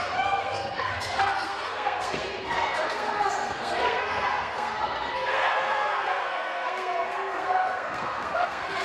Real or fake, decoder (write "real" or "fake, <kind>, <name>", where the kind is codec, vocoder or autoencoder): fake, codec, SNAC